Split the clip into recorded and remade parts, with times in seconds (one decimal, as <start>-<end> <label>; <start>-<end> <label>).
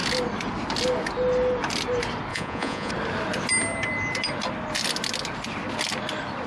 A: 0.0-2.3 recorded; 2.3-2.9 remade; 2.9-6.5 recorded